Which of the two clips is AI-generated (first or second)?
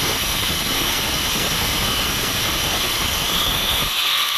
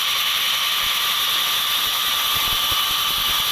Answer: first